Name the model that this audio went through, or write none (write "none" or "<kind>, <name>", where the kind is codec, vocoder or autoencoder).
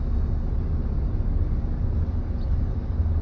none